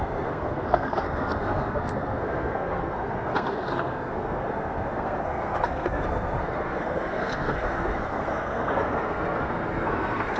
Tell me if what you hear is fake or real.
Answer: fake